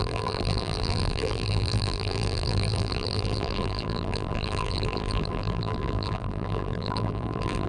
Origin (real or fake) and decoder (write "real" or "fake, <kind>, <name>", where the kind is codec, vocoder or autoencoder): fake, vocoder, BigVGAN v2